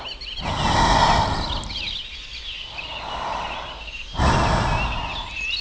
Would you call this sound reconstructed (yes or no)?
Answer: no